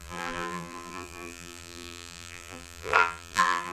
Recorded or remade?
remade